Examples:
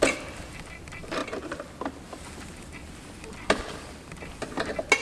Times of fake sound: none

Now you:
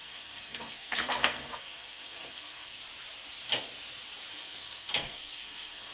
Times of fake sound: 0.0-2.8 (codec, SNAC); 4.3-5.9

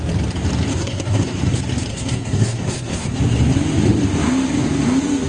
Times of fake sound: 0.7-1.4 (codec, SNAC); 1.9-3.2

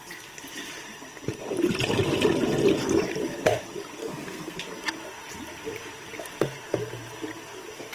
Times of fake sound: 4.0-4.6 (codec, SNAC)

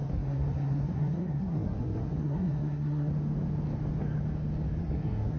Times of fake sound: 0.0-3.1 (codec, SNAC); 4.8-5.4